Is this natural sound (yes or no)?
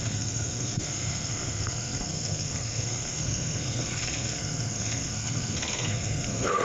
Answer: no